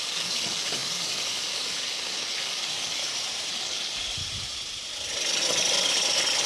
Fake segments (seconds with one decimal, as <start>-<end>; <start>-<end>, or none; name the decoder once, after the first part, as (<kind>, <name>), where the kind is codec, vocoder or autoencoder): 0.0-3.0 (codec, DAC); 3.5-4.2